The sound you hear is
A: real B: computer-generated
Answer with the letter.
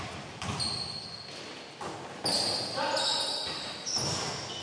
A